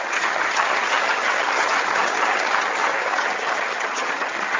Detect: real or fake fake